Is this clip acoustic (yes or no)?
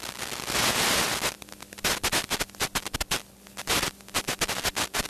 yes